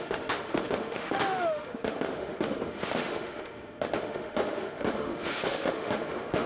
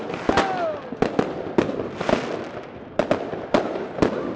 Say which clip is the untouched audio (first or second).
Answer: second